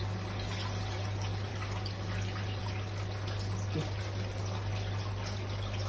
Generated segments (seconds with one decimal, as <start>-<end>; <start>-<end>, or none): none